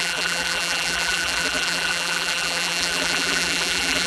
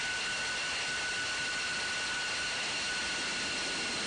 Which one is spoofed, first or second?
first